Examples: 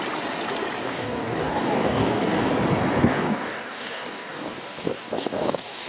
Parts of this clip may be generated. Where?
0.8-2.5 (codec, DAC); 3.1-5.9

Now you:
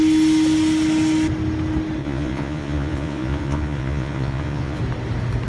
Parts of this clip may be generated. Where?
2.0-4.8 (vocoder, Vocos)

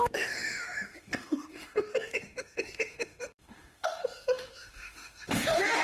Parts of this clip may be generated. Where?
0.0-5.8 (autoencoder, DAC-VAE)

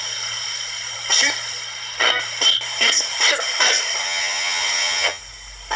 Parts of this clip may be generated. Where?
4.0-5.2 (vocoder, HiFi-GAN)

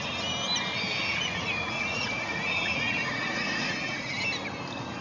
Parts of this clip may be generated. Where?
1.1-4.1 (vocoder, Vocos)

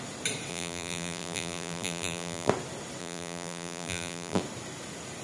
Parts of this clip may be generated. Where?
0.5-2.5 (vocoder, BigVGAN v2); 3.0-4.4

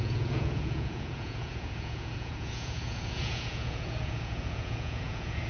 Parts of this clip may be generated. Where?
0.0-5.5 (vocoder, Vocos)